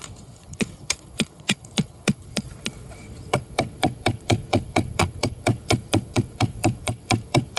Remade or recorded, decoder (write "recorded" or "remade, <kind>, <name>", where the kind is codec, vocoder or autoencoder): remade, vocoder, Vocos